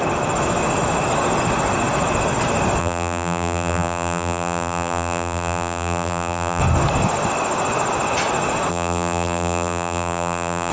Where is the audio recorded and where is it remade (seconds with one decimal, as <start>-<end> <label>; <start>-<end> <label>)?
0.0-2.8 recorded; 2.8-6.6 remade; 6.6-8.7 recorded; 8.7-10.7 remade